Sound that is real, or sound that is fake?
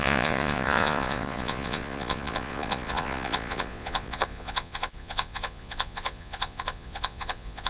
fake